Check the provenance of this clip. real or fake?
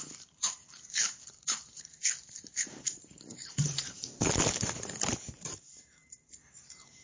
fake